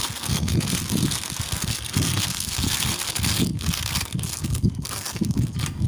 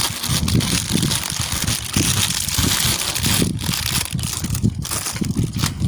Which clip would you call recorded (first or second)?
second